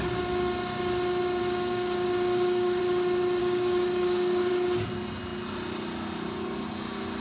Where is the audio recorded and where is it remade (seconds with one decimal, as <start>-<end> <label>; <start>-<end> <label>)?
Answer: 0.0-1.4 recorded; 1.4-2.8 remade; 2.8-3.4 recorded; 3.4-4.5 remade; 4.5-7.2 recorded